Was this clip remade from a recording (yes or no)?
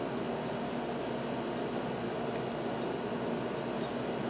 no